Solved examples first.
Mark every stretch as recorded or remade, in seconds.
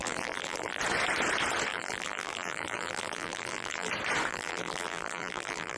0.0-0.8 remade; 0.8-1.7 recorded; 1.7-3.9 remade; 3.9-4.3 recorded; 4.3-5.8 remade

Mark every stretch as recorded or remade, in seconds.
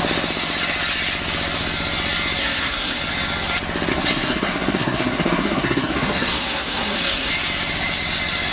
0.0-2.4 recorded; 2.4-3.0 remade; 3.0-3.9 recorded; 3.9-7.3 remade; 7.3-8.5 recorded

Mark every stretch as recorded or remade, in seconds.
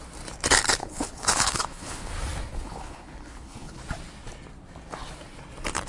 0.0-0.8 recorded; 0.8-2.1 remade; 2.1-2.5 recorded; 2.5-3.8 remade; 3.8-5.9 recorded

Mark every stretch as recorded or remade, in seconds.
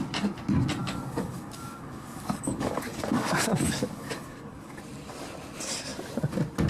0.0-0.8 recorded; 0.8-4.8 remade; 4.8-6.7 recorded